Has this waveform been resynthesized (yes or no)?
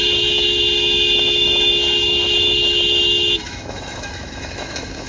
yes